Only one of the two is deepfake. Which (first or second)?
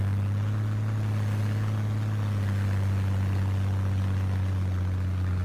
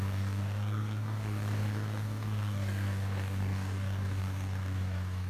second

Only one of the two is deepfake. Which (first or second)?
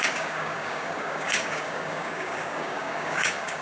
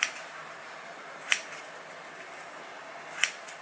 first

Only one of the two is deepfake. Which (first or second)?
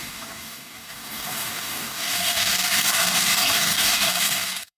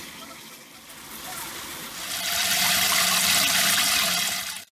first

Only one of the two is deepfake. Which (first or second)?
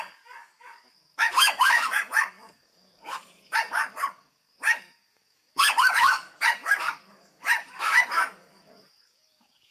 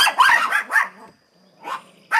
first